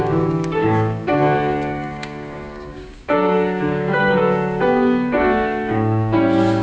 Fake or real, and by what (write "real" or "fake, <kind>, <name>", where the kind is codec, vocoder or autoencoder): fake, codec, DAC